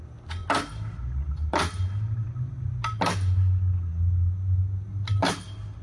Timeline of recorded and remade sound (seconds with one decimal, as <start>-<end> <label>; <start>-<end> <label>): 0.0-5.8 recorded